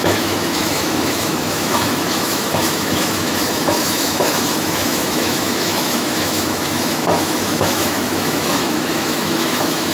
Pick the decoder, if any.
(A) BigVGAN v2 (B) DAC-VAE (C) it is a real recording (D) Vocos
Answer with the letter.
B